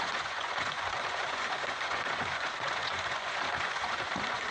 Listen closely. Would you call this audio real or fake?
fake